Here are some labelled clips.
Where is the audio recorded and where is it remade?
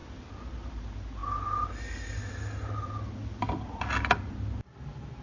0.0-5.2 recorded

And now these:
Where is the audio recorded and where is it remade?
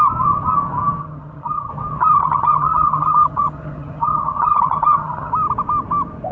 0.0-1.0 recorded; 1.0-1.7 remade; 1.7-2.2 recorded; 2.2-5.3 remade; 5.3-6.3 recorded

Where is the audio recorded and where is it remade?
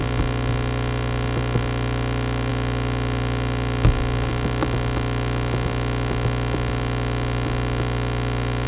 0.0-8.7 recorded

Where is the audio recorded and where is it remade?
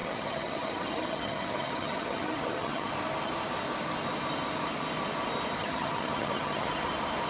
0.0-2.9 remade; 2.9-5.6 recorded; 5.6-6.7 remade; 6.7-7.3 recorded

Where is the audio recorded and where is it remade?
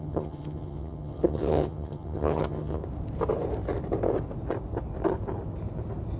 0.0-2.8 remade; 2.8-6.2 recorded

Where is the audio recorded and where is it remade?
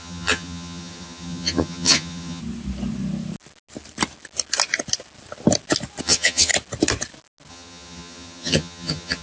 0.0-2.4 remade; 2.4-6.0 recorded; 6.0-6.5 remade; 6.5-7.5 recorded; 7.5-9.2 remade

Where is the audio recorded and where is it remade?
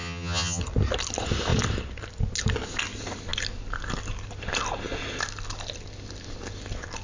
0.0-0.6 remade; 0.6-7.0 recorded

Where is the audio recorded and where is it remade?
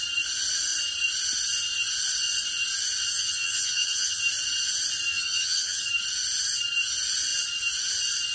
0.0-3.1 recorded; 3.1-4.2 remade; 4.2-5.1 recorded; 5.1-5.9 remade; 5.9-8.3 recorded